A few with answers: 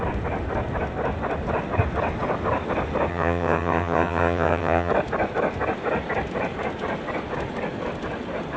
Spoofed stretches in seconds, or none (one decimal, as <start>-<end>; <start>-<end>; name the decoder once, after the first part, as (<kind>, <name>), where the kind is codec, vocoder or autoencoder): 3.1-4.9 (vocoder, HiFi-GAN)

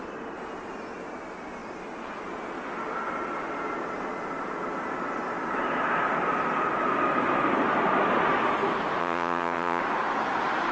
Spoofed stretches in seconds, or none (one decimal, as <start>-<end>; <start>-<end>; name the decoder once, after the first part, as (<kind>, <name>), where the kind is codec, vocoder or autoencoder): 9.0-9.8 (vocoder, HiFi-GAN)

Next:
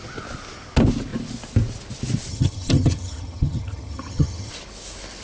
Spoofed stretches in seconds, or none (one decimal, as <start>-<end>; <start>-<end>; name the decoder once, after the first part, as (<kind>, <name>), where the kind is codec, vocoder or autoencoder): 2.3-4.5 (vocoder, HiFi-GAN)